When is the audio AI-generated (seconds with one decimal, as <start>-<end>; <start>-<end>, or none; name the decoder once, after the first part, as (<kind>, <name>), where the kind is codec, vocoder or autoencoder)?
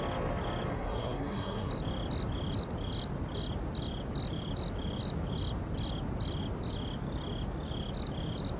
0.7-1.7 (codec, SNAC)